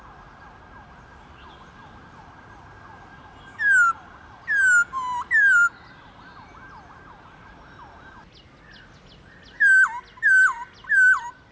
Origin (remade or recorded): recorded